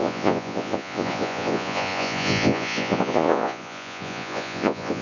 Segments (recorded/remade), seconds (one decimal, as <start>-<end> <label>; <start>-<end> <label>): 0.0-5.0 remade